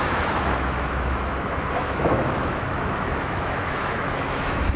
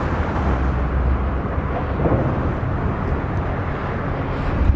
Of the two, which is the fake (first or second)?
first